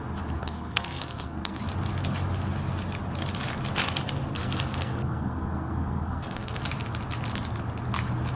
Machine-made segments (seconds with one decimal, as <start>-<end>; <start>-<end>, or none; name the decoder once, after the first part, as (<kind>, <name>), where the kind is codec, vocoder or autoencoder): 0.4-1.6 (codec, SNAC); 4.3-6.6